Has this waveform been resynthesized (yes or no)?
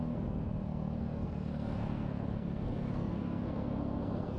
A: yes